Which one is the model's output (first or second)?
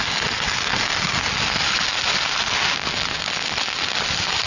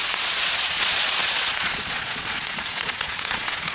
second